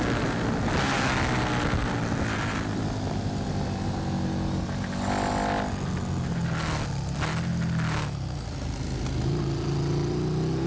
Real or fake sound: real